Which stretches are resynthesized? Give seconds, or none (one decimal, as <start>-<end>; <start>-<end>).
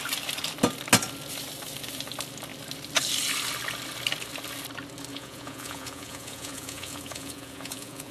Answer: 5.1-8.1